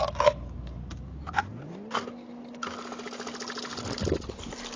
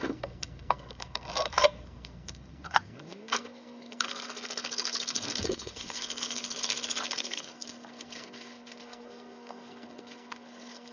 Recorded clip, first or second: first